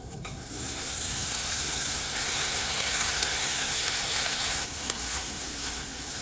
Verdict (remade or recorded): remade